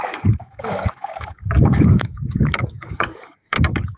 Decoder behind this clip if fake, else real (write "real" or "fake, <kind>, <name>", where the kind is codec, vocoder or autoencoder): fake, codec, DAC